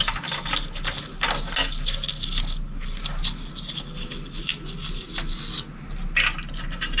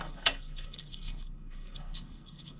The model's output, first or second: second